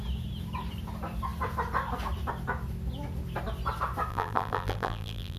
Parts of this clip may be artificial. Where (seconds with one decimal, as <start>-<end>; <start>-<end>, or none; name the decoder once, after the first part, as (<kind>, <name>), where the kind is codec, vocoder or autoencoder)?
4.1-5.4 (vocoder, BigVGAN v2)